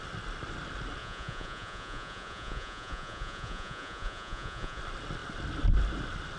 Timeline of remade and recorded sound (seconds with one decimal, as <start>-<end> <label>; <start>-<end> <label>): 0.0-1.0 recorded; 1.0-4.8 remade; 4.8-6.4 recorded